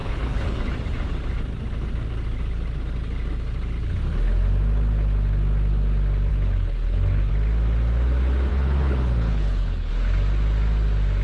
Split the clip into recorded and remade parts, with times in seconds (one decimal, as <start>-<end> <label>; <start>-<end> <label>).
0.0-0.6 remade; 0.6-6.3 recorded; 6.3-7.3 remade; 7.3-8.5 recorded; 8.5-9.9 remade; 9.9-11.2 recorded

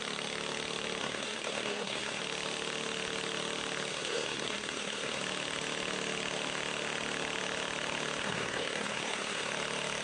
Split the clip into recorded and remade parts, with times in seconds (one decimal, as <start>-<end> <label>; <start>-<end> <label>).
0.0-1.0 recorded; 1.0-2.2 remade; 2.2-3.9 recorded; 3.9-5.2 remade; 5.2-8.2 recorded; 8.2-9.5 remade; 9.5-10.0 recorded

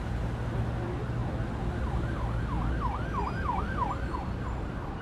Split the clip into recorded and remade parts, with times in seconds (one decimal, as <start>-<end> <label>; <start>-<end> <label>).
0.0-5.0 recorded

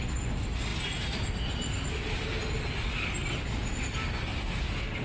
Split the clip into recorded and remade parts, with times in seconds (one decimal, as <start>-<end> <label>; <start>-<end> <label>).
0.0-5.0 recorded

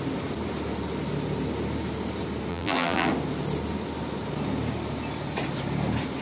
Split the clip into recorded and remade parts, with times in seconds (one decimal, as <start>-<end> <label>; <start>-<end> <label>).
0.0-2.5 recorded; 2.5-3.1 remade; 3.1-6.2 recorded

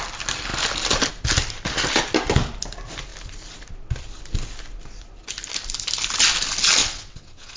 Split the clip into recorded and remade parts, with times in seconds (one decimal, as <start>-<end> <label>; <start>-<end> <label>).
0.0-6.8 recorded; 6.8-7.6 remade

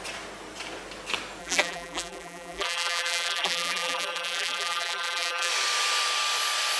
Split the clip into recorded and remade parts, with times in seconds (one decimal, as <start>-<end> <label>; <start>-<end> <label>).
0.0-1.4 recorded; 1.4-5.5 remade; 5.5-6.8 recorded